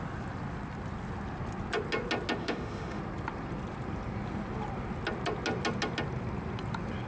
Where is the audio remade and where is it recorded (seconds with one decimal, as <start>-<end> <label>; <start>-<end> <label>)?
0.0-2.4 recorded; 2.4-3.0 remade; 3.0-7.1 recorded